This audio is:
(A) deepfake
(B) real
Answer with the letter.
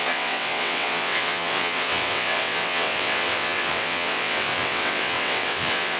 A